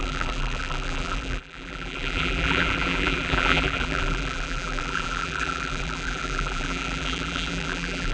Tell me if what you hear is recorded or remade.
remade